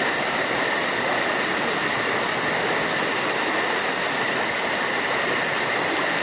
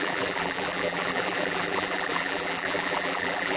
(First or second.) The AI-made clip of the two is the second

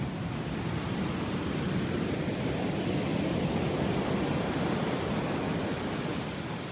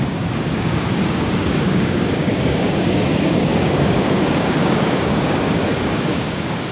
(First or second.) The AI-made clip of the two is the second